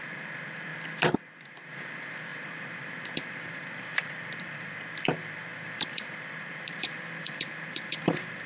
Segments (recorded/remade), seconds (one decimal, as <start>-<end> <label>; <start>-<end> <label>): 0.0-0.7 remade; 0.7-1.5 recorded; 1.5-8.5 remade